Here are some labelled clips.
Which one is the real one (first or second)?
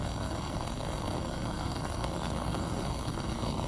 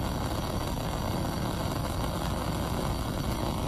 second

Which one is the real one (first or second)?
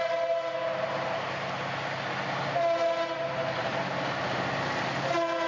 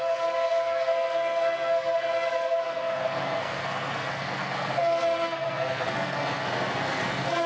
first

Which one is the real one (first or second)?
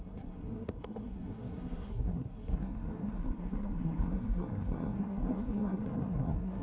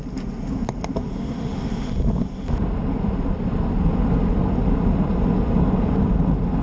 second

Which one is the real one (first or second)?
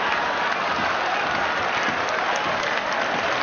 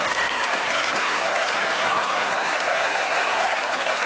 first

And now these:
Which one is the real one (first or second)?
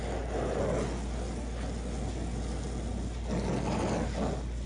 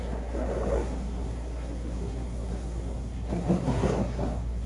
first